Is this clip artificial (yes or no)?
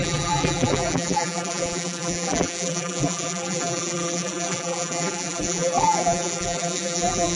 yes